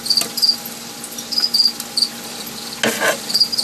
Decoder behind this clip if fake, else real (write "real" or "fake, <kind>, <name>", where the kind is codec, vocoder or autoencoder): real